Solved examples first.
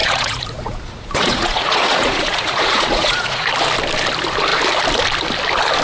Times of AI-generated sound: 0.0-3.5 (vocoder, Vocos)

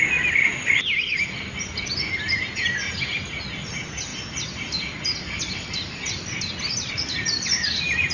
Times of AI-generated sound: none